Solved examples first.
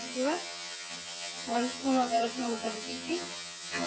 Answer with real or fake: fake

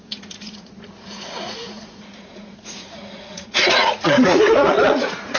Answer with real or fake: fake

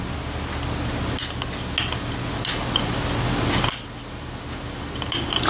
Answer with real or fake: real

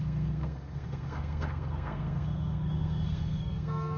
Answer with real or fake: fake